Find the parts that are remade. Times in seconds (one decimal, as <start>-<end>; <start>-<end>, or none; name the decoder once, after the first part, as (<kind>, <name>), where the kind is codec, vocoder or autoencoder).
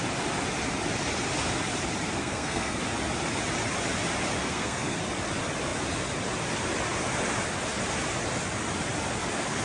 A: 2.2-2.8 (codec, SNAC); 4.4-5.0